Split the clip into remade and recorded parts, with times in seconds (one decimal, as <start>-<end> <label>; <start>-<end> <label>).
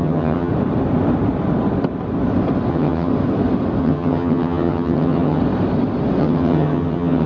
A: 0.0-0.5 remade; 0.5-2.7 recorded; 2.7-3.1 remade; 3.1-3.8 recorded; 3.8-5.4 remade; 5.4-6.2 recorded; 6.2-7.3 remade